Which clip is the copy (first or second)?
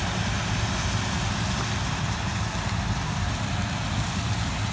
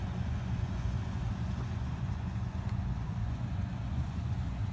second